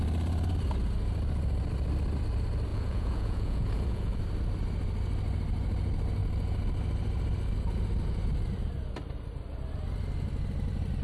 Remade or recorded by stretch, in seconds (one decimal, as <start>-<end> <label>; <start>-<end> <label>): 0.0-2.7 recorded; 2.7-4.2 remade; 4.2-11.0 recorded